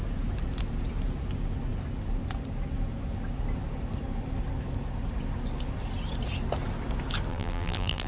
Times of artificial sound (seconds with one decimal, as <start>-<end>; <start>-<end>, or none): 7.3-8.1